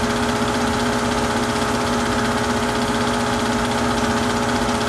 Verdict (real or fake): real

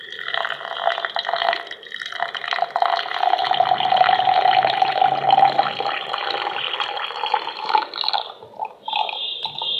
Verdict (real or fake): real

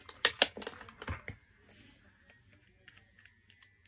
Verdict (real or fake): real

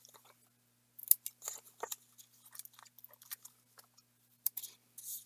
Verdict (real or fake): real